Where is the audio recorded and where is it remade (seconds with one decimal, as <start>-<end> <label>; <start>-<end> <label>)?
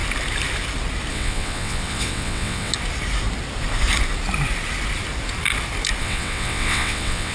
0.0-1.1 recorded; 1.1-2.7 remade; 2.7-6.0 recorded; 6.0-7.3 remade